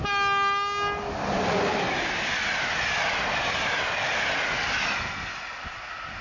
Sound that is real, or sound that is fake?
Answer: real